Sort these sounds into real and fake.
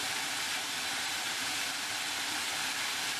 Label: fake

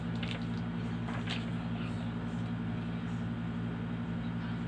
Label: real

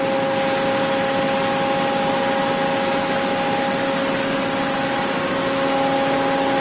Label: real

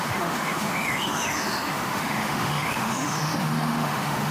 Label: fake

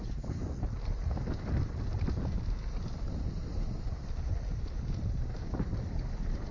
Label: real